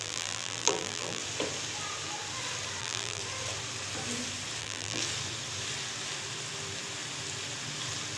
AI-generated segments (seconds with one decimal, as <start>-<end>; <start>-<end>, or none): 0.0-1.2; 2.8-3.2; 4.6-5.0